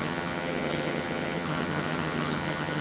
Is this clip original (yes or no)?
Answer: no